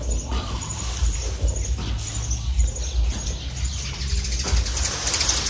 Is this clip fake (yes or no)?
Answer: no